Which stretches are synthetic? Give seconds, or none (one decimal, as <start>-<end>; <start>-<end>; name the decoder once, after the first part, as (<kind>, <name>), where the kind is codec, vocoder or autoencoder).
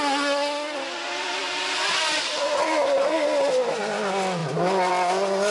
none